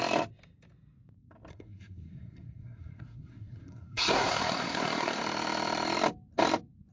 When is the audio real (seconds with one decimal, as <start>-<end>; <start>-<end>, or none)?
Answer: 0.0-1.5; 5.2-6.9